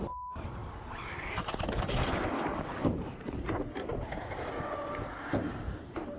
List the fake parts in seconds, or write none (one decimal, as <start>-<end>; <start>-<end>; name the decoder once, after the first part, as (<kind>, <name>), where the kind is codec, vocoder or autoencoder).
0.0-0.6 (vocoder, BigVGAN v2); 2.8-6.2